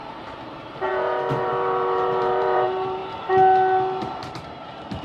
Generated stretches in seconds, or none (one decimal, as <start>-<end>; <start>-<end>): 0.0-3.0; 4.1-5.0